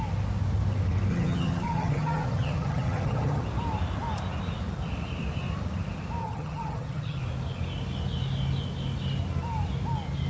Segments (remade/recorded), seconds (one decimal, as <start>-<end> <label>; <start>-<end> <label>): 0.0-1.1 recorded; 1.1-3.4 remade; 3.4-6.2 recorded; 6.2-7.2 remade; 7.2-10.3 recorded